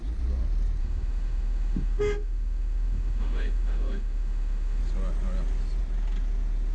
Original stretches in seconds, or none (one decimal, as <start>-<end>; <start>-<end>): 0.0-0.8; 4.8-6.7